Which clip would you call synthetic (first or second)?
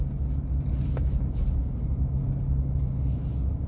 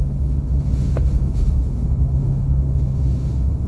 second